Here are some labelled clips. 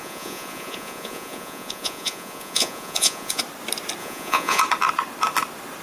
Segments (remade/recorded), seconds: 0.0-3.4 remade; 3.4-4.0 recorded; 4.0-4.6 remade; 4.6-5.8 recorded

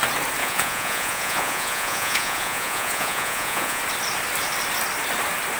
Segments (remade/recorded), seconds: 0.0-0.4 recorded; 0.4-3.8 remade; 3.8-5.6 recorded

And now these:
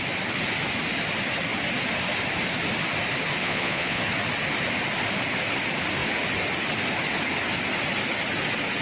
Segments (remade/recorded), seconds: 0.0-3.4 recorded; 3.4-4.0 remade; 4.0-8.8 recorded